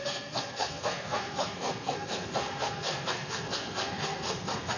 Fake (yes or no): yes